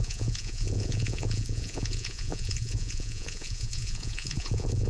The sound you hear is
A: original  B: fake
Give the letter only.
B